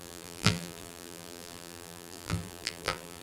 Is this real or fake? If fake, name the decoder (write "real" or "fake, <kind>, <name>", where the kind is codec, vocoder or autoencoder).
fake, vocoder, BigVGAN v2